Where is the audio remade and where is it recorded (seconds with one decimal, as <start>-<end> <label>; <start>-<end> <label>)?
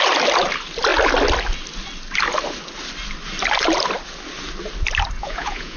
0.0-5.2 recorded; 5.2-5.8 remade